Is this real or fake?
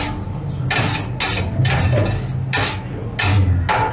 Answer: real